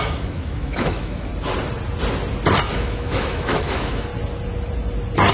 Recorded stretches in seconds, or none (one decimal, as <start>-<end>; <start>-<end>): 1.3-2.7; 4.1-5.3